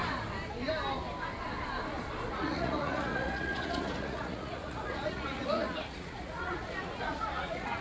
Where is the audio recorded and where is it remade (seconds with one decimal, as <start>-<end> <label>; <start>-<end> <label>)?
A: 0.0-2.3 recorded; 2.3-7.8 remade